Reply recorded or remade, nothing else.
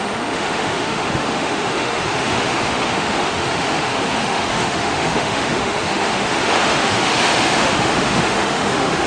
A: remade